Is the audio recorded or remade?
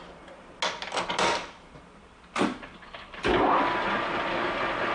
recorded